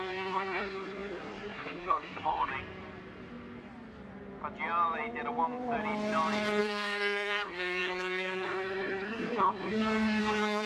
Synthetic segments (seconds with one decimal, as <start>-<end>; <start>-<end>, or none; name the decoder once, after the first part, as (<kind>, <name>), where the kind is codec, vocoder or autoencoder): 0.0-2.5 (codec, SNAC); 6.6-10.7